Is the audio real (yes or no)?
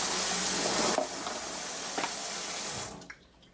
yes